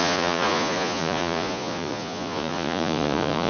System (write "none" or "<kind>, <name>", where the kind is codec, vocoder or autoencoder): vocoder, Vocos